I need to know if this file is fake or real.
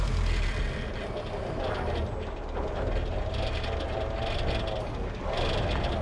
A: real